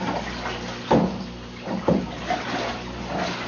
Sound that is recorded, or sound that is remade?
recorded